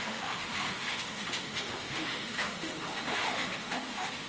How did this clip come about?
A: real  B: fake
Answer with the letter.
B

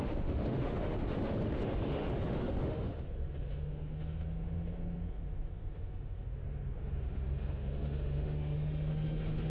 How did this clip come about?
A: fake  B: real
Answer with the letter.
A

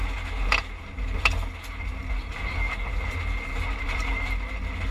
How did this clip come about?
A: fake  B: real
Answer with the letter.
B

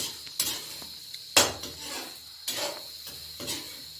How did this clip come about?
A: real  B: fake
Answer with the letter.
A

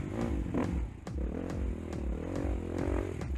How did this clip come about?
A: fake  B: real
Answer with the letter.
B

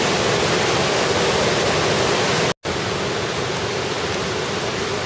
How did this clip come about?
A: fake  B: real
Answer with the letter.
B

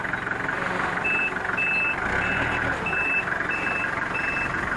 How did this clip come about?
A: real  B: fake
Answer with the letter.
A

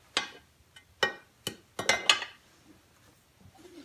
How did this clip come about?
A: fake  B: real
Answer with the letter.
B